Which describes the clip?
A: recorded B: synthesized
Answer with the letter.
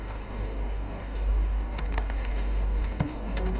B